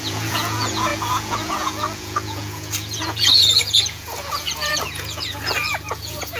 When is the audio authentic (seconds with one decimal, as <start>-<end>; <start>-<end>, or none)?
none